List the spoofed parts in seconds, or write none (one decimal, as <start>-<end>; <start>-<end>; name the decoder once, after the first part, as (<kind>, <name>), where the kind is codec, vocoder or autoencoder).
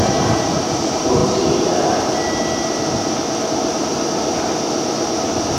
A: 0.0-1.2 (vocoder, BigVGAN v2); 3.5-3.9; 5.1-5.6